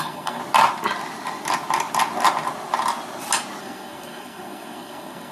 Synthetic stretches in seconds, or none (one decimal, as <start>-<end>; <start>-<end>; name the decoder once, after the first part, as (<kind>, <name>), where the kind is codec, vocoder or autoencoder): 0.0-0.4 (codec, SNAC); 3.6-5.3